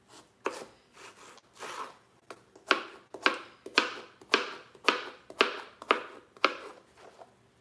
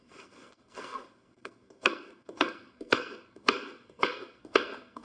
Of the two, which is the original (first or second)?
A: first